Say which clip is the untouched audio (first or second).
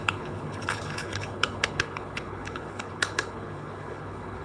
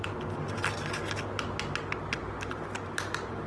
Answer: second